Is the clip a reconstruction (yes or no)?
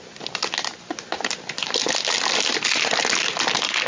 no